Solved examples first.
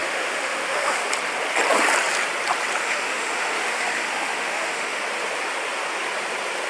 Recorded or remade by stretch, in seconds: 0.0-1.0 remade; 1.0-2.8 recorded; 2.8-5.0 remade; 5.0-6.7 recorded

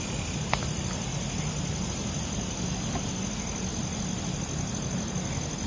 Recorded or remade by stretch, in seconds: 0.0-5.7 recorded

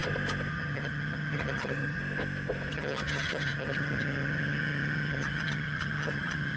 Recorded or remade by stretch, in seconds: 0.0-0.5 recorded; 0.5-2.0 remade; 2.0-2.7 recorded; 2.7-6.6 remade

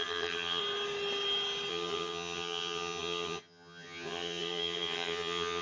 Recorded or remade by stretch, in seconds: 0.0-0.6 remade; 0.6-1.7 recorded; 1.7-5.6 remade

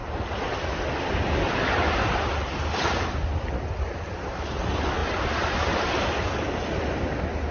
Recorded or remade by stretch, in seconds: 0.0-5.0 recorded; 5.0-6.1 remade; 6.1-7.5 recorded

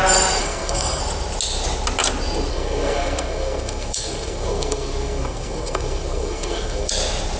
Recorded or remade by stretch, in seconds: 0.0-0.4 recorded; 0.4-1.0 remade; 1.0-2.5 recorded; 2.5-6.9 remade; 6.9-7.4 recorded